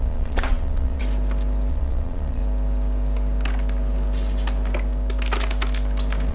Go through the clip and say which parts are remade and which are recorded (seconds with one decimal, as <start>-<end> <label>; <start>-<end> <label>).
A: 0.0-1.0 remade; 1.0-1.7 recorded; 1.7-2.4 remade; 2.4-6.3 recorded